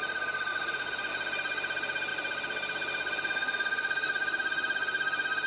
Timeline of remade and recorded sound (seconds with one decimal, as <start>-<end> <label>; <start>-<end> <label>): 0.0-0.5 recorded; 0.5-1.1 remade; 1.1-5.5 recorded